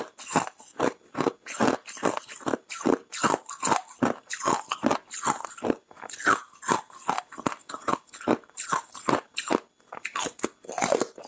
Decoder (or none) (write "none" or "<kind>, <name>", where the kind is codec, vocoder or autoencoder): none